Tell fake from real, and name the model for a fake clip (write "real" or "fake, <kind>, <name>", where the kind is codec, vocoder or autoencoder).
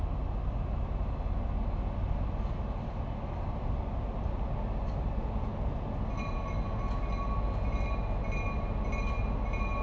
real